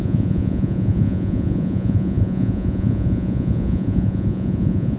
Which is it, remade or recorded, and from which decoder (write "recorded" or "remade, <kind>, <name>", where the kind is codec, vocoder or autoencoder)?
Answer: remade, vocoder, Vocos